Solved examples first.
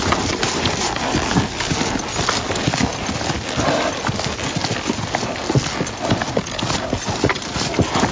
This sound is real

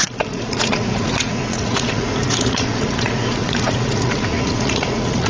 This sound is fake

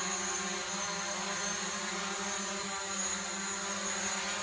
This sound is real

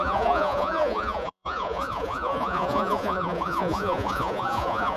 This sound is fake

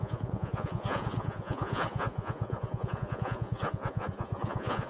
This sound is fake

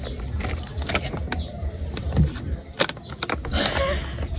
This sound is real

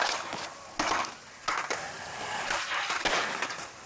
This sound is real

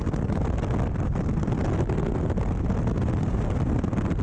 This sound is real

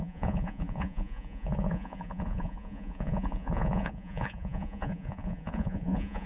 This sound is fake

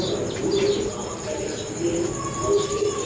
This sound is real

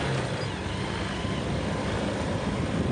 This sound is real